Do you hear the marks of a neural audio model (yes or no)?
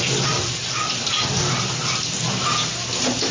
no